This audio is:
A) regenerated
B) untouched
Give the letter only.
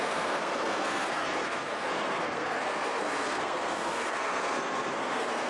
A